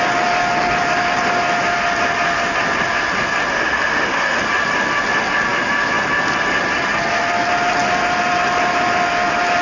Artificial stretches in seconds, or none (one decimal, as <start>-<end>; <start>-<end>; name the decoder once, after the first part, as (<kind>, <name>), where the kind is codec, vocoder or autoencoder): 3.5-4.4 (autoencoder, DAC-VAE)